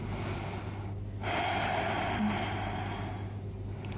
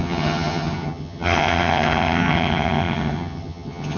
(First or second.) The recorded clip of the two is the first